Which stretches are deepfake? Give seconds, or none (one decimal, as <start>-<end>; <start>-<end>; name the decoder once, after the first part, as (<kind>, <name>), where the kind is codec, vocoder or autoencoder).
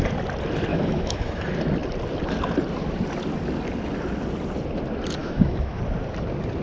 0.7-1.4 (autoencoder, DAC-VAE); 5.2-5.8